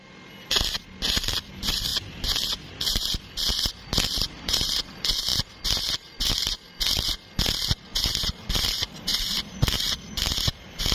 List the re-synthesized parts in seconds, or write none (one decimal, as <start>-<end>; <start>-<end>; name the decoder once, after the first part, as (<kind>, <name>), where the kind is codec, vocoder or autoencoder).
0.0-10.9 (vocoder, BigVGAN v2)

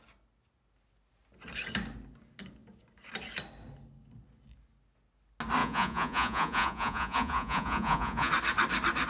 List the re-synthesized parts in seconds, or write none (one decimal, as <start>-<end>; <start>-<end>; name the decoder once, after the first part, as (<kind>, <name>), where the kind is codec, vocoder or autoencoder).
5.6-8.3 (vocoder, Vocos)

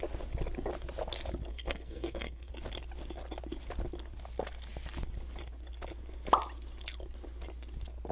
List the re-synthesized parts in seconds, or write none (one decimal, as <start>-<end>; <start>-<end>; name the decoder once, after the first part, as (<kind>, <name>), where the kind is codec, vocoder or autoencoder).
1.5-2.5 (codec, SNAC)